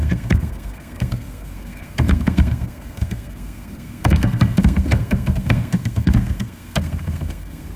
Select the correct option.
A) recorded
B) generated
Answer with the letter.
B